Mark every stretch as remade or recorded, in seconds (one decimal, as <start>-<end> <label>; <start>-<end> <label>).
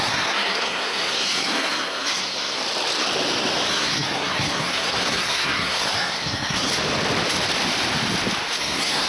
0.0-2.6 remade; 2.6-3.7 recorded; 3.7-6.7 remade; 6.7-8.6 recorded; 8.6-9.1 remade